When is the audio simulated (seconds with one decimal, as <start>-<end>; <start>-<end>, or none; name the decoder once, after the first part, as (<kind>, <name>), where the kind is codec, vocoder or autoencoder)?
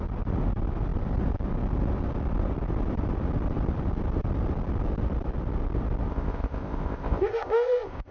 6.1-8.1 (codec, ZipCodec)